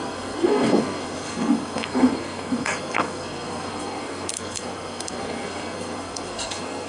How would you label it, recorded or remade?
remade